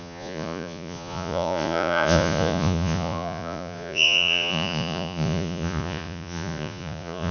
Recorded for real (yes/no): no